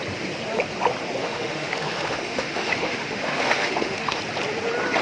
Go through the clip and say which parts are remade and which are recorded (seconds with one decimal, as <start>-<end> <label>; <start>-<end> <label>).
0.0-1.2 recorded; 1.2-4.2 remade; 4.2-5.0 recorded